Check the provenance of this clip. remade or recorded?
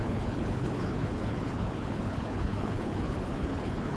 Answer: remade